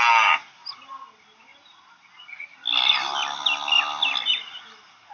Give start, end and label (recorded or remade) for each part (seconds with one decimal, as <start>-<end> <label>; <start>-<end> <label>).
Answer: 0.0-5.1 recorded